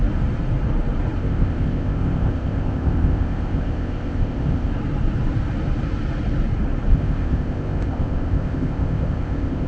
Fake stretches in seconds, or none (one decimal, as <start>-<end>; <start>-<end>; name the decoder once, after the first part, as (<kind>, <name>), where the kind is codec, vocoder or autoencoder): 1.2-4.7 (codec, ZipCodec); 6.9-9.7

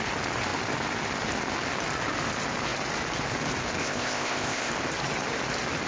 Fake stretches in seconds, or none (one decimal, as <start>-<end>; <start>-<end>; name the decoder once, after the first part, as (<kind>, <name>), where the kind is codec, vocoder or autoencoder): 3.8-4.7 (codec, ZipCodec)

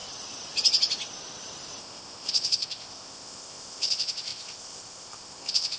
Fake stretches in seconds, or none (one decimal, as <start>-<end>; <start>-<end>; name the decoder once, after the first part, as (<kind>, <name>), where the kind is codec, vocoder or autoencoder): 1.8-5.8 (codec, ZipCodec)

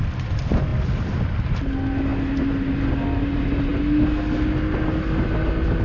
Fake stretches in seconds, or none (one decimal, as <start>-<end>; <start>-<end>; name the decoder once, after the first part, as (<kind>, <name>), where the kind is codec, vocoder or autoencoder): none

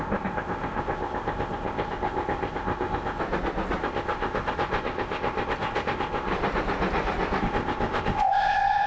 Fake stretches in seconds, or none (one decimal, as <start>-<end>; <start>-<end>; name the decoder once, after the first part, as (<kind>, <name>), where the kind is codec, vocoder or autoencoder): 0.0-3.2 (codec, ZipCodec); 3.8-6.3; 7.4-8.9

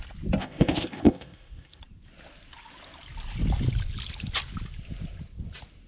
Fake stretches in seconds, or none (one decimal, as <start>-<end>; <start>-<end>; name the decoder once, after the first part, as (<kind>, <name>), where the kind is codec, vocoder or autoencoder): 0.4-1.8 (codec, ZipCodec)

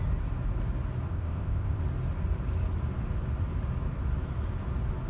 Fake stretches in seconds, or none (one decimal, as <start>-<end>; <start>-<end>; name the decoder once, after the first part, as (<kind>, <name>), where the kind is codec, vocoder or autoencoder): 1.1-1.8 (codec, ZipCodec)

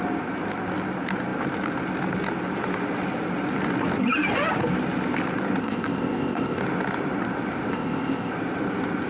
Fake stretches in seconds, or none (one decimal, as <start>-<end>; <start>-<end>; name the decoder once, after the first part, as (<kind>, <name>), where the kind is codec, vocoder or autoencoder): 5.6-6.6 (codec, ZipCodec); 7.7-8.3